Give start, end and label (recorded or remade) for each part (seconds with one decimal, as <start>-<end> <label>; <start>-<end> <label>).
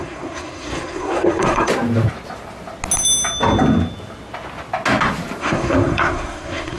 0.0-1.7 remade; 1.7-5.4 recorded; 5.4-6.8 remade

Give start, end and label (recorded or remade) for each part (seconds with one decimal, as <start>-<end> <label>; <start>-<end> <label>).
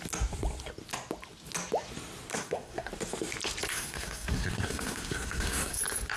0.0-2.3 recorded; 2.3-2.9 remade; 2.9-3.7 recorded; 3.7-5.8 remade; 5.8-6.2 recorded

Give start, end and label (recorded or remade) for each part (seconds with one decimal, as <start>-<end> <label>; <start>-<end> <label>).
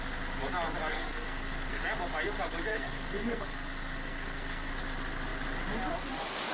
0.0-0.9 recorded; 0.9-1.8 remade; 1.8-2.7 recorded; 2.7-4.7 remade; 4.7-6.5 recorded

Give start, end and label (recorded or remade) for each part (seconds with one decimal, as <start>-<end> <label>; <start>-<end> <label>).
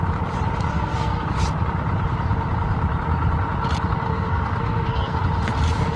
0.0-0.7 recorded; 0.7-1.3 remade; 1.3-4.1 recorded; 4.1-5.2 remade; 5.2-6.0 recorded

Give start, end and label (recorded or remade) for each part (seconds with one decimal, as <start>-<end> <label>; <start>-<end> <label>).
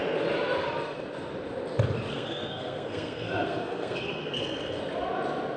0.0-2.1 recorded; 2.1-4.8 remade; 4.8-5.6 recorded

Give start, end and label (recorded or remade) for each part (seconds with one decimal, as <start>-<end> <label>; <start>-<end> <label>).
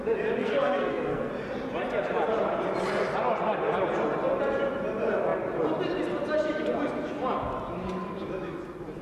0.0-0.4 recorded; 0.4-1.3 remade; 1.3-9.0 recorded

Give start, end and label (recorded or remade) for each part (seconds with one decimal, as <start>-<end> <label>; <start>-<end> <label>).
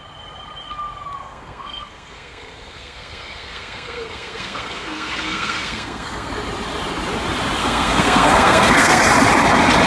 0.0-1.2 recorded; 1.2-6.3 remade; 6.3-7.6 recorded; 7.6-9.0 remade; 9.0-9.9 recorded